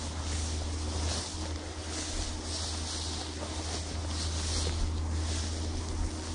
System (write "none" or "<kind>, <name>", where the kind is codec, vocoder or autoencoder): none